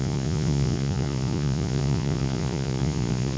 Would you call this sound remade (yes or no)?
yes